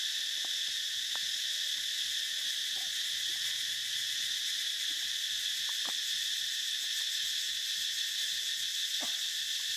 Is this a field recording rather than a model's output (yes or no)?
yes